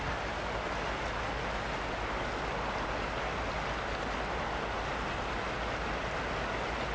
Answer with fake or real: real